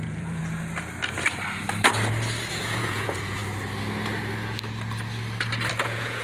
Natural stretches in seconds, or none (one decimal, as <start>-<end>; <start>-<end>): 0.4-2.5; 3.4-5.7